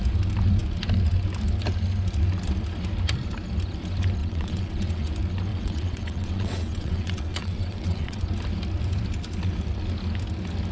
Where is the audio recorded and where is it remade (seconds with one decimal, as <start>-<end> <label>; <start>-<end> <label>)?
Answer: 0.0-4.2 recorded; 4.2-5.1 remade; 5.1-5.5 recorded; 5.5-8.2 remade; 8.2-10.7 recorded